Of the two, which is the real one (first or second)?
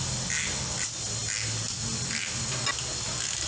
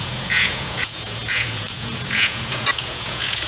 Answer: first